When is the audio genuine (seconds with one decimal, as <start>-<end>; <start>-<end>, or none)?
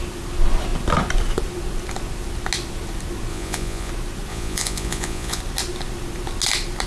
0.0-3.3; 3.9-4.3; 5.4-6.9